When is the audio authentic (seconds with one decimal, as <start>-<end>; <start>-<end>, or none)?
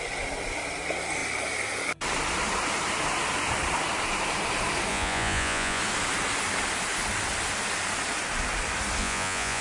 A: 0.0-4.9; 5.8-9.0